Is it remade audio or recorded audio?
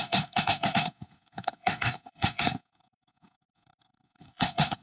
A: remade